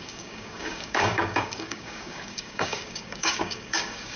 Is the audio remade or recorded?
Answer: remade